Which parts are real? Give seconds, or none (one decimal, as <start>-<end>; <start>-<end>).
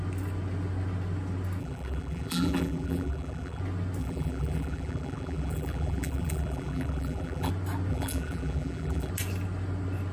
0.0-1.6; 3.6-4.0; 7.5-7.9; 9.1-10.1